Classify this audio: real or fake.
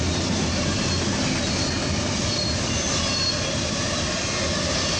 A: real